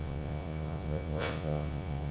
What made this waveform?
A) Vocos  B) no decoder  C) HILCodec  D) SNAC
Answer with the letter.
A